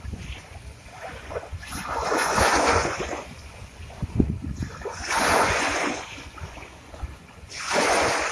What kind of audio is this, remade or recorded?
remade